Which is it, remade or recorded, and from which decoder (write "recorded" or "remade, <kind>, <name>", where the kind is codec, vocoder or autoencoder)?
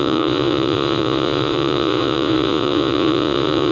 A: remade, vocoder, Vocos